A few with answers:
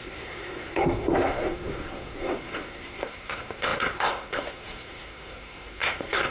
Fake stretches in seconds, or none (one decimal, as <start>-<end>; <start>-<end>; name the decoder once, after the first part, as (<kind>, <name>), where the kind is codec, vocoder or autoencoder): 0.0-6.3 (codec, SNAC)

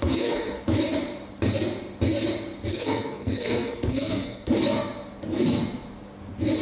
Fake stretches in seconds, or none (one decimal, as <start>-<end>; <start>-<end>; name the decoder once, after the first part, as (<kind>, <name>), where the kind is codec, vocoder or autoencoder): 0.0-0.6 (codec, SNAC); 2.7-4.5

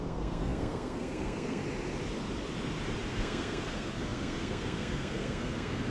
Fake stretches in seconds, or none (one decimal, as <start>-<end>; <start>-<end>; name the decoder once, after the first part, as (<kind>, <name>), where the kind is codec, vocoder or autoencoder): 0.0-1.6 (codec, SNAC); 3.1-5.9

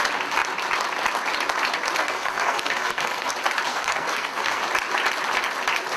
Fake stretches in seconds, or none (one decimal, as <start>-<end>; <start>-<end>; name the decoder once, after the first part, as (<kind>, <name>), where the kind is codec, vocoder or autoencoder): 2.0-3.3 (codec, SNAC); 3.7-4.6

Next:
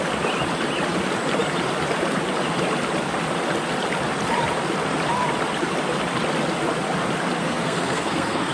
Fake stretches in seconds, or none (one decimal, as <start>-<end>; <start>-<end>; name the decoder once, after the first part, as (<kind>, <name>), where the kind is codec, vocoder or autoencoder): 7.4-8.5 (codec, SNAC)

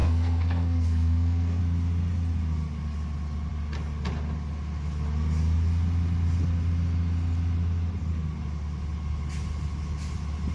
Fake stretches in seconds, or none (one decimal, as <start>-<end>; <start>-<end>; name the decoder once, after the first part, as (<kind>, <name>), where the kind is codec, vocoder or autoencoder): 0.0-1.6 (codec, SNAC)

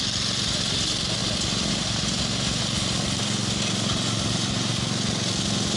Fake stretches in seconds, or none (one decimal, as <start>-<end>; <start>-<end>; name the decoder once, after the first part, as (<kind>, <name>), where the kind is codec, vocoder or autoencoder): none